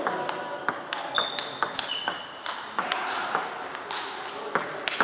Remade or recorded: recorded